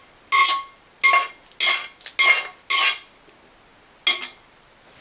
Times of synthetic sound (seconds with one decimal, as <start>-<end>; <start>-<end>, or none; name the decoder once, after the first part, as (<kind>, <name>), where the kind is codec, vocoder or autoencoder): none